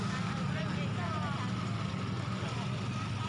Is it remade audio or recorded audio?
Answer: recorded